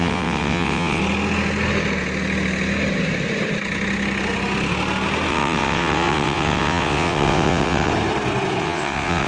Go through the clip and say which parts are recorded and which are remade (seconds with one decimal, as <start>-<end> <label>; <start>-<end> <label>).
0.0-1.0 remade; 1.0-5.3 recorded; 5.3-7.9 remade; 7.9-8.6 recorded; 8.6-9.3 remade